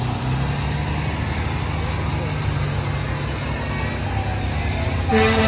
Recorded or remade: recorded